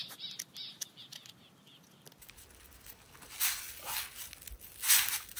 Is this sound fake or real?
real